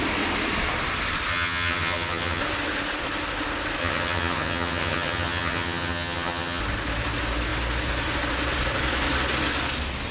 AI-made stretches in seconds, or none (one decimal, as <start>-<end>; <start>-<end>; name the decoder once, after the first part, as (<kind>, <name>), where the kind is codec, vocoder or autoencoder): 1.3-2.4 (vocoder, HiFi-GAN); 3.8-6.6